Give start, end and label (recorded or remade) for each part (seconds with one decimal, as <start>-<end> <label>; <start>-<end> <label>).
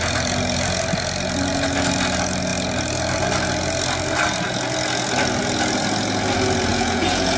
0.0-6.7 recorded; 6.7-7.4 remade